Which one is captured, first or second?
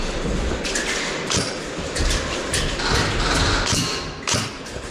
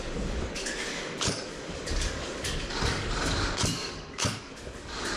first